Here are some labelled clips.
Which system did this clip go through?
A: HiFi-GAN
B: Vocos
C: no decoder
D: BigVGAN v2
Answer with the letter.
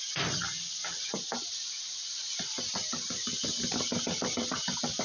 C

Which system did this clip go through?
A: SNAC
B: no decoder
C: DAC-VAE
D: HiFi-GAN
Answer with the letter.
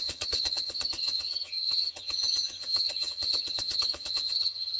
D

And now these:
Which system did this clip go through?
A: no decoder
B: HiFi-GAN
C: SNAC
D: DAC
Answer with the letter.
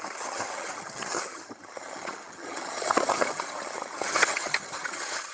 B